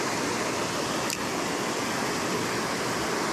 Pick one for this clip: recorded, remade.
recorded